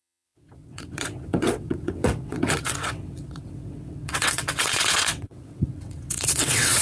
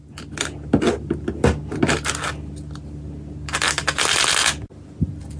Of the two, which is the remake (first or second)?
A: first